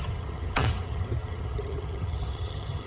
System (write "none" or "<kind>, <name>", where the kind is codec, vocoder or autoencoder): vocoder, HiFi-GAN